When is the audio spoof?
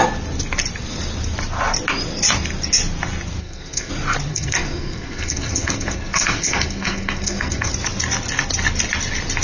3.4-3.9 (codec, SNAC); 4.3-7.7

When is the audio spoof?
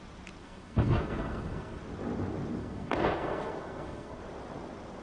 0.4-1.8 (codec, SNAC); 2.6-4.2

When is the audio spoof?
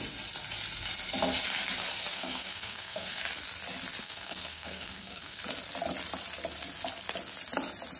2.1-3.2 (codec, SNAC); 4.0-5.4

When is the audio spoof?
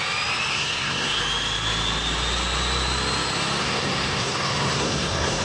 0.5-1.2 (codec, SNAC); 3.6-5.4